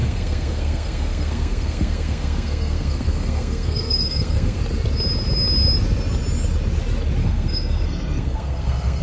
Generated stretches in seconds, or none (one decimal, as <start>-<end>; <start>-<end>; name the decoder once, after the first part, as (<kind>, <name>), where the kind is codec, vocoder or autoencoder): 0.0-4.6 (codec, SNAC); 7.2-9.0